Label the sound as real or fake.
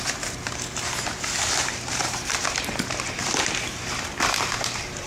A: fake